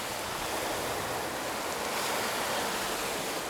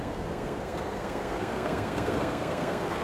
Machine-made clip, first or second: second